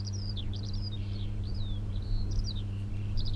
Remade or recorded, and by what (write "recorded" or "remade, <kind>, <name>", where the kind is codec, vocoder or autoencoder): remade, vocoder, BigVGAN v2